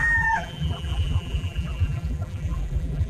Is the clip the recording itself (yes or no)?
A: no